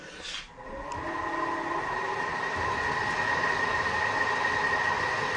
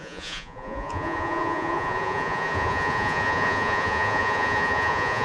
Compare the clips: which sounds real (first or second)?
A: first